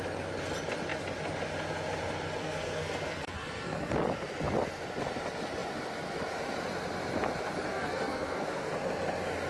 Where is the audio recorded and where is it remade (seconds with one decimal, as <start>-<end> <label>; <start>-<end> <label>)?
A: 0.0-2.4 recorded; 2.4-3.9 remade; 3.9-7.7 recorded; 7.7-8.7 remade; 8.7-9.5 recorded